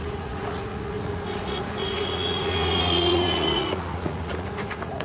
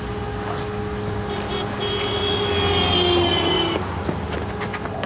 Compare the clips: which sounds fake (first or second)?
first